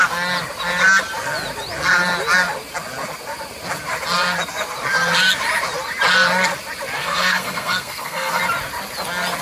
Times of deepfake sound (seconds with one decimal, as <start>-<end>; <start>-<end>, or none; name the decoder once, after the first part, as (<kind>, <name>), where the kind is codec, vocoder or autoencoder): 7.0-8.4 (codec, SNAC)